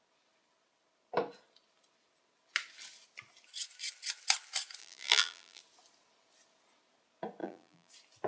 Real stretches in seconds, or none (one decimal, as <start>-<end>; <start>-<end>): 0.0-4.8; 5.6-7.4; 7.9-8.3